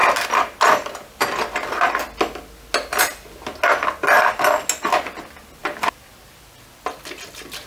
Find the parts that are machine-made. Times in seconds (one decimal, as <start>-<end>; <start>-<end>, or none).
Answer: none